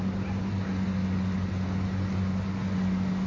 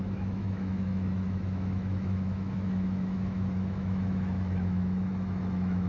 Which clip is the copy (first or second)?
second